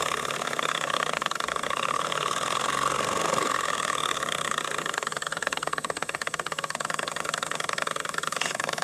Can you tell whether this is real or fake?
fake